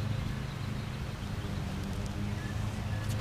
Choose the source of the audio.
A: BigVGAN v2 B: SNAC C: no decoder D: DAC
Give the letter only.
C